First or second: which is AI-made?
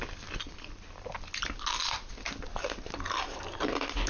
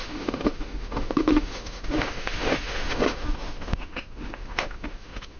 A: second